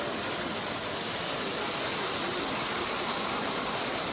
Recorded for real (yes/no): yes